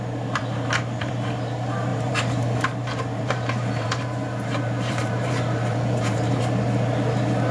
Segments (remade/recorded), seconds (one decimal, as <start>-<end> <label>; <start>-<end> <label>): 0.0-0.4 recorded; 0.4-1.1 remade; 1.1-1.9 recorded; 1.9-6.4 remade; 6.4-7.5 recorded